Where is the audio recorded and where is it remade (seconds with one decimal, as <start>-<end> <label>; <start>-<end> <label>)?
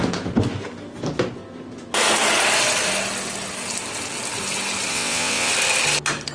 0.0-4.9 recorded; 4.9-5.5 remade; 5.5-6.3 recorded